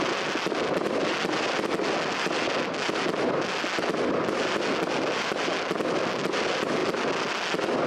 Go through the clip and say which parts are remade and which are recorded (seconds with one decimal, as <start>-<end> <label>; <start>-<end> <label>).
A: 0.0-7.9 recorded